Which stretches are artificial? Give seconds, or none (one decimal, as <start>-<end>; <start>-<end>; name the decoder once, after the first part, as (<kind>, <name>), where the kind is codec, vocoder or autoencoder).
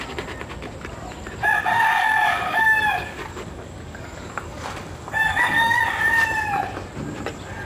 1.7-5.8 (codec, DAC)